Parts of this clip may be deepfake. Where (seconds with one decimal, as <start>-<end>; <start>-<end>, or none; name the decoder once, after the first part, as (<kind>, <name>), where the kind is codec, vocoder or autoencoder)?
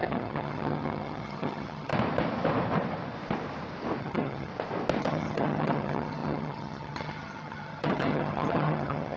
0.0-1.9 (vocoder, HiFi-GAN); 4.0-4.5; 5.0-9.2